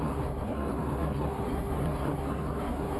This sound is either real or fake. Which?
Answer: fake